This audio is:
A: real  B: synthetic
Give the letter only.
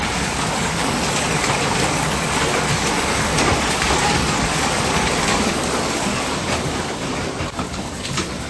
B